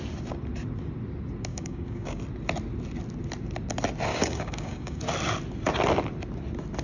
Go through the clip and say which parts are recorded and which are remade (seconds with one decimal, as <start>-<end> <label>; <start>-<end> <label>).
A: 0.0-1.5 recorded; 1.5-2.2 remade; 2.2-4.1 recorded; 4.1-5.0 remade; 5.0-6.8 recorded